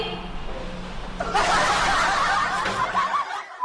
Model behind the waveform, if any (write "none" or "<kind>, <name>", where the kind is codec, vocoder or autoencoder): none